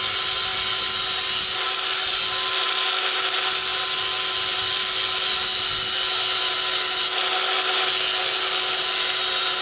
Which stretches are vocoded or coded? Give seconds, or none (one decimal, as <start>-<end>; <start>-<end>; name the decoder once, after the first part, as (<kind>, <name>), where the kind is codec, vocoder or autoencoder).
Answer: none